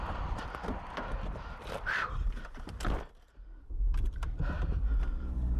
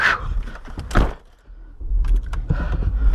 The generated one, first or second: first